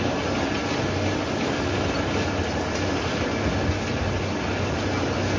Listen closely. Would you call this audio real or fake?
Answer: real